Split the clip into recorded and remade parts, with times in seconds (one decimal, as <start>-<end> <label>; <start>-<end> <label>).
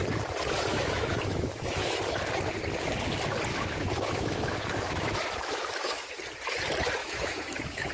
0.0-0.7 recorded; 0.7-2.0 remade; 2.0-3.5 recorded; 3.5-6.1 remade; 6.1-7.0 recorded; 7.0-7.9 remade